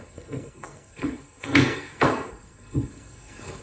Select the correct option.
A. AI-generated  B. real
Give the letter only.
A